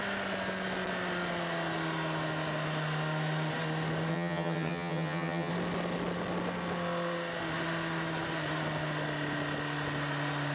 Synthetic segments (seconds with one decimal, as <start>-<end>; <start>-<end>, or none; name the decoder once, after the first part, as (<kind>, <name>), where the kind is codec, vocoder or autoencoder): 4.1-5.5 (vocoder, HiFi-GAN)

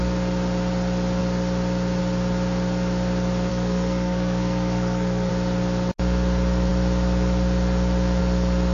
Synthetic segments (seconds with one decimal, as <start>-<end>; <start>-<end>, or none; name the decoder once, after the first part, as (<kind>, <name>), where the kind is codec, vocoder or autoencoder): 3.5-5.3 (codec, SNAC)

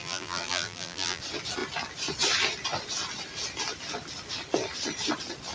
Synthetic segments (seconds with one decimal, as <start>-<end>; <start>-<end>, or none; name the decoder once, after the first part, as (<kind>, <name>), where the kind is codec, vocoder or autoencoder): 0.0-1.2 (vocoder, BigVGAN v2)

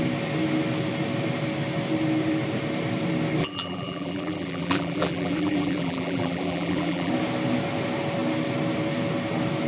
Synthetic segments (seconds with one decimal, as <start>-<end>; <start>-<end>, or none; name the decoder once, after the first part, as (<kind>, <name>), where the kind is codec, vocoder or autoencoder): 3.4-7.1 (vocoder, BigVGAN v2)